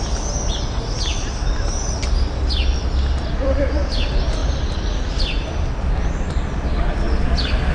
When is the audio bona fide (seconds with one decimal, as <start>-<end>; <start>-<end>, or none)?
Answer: 0.0-7.7